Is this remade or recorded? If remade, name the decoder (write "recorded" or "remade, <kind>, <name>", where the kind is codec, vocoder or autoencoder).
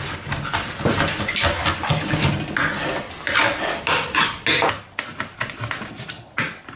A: recorded